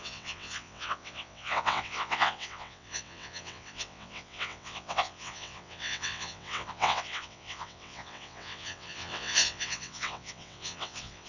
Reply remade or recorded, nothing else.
remade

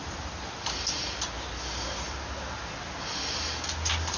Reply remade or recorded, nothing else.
recorded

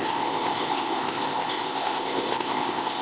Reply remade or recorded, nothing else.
remade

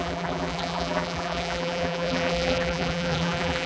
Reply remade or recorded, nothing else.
remade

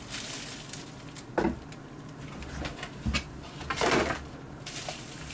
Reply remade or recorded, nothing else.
recorded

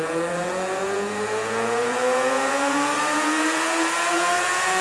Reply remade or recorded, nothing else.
remade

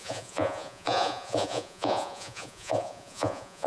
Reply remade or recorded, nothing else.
remade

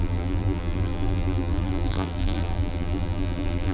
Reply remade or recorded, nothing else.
remade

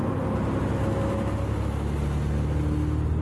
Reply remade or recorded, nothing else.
recorded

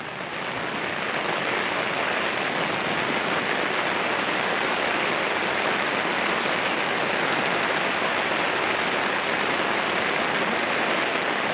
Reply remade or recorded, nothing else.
recorded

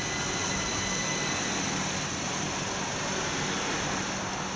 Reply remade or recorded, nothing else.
recorded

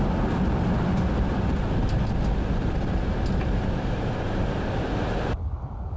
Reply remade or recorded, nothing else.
recorded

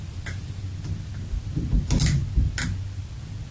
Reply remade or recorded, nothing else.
recorded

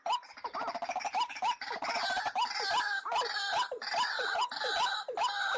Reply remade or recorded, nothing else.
recorded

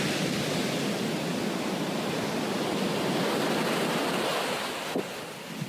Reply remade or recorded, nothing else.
recorded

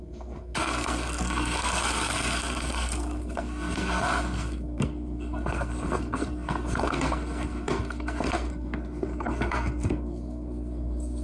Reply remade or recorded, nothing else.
remade